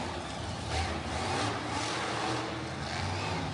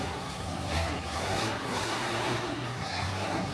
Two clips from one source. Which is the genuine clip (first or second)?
first